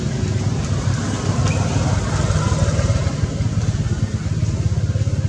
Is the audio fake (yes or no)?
no